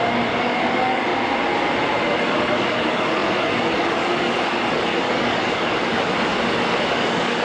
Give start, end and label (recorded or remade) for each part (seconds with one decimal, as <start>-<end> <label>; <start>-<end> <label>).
0.0-1.1 remade; 1.1-2.2 recorded; 2.2-6.3 remade; 6.3-6.9 recorded; 6.9-7.4 remade